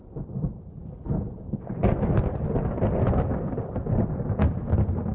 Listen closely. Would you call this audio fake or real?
real